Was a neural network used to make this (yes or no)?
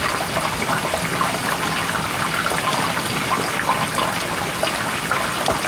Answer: no